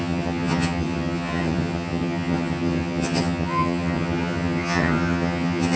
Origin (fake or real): fake